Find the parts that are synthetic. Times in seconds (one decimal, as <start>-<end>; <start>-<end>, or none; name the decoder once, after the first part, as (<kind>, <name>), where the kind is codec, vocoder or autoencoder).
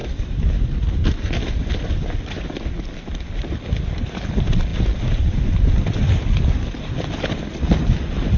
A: none